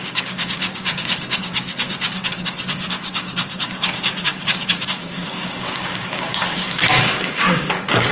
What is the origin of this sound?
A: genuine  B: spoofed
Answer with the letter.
B